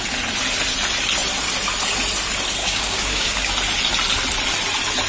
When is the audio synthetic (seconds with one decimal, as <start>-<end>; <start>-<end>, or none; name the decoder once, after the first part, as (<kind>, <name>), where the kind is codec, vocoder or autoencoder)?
2.6-3.5 (codec, DAC)